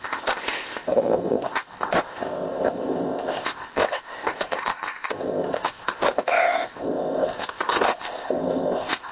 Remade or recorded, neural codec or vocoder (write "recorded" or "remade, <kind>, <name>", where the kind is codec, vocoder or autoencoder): remade, codec, ZipCodec